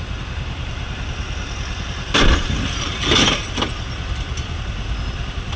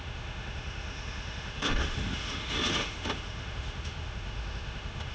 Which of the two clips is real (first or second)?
first